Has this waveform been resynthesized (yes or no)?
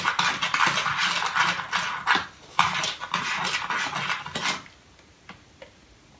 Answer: no